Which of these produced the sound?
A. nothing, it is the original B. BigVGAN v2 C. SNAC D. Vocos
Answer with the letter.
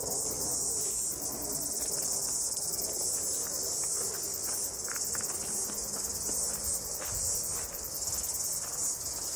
A